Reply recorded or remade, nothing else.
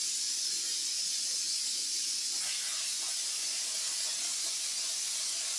remade